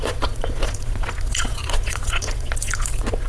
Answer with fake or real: fake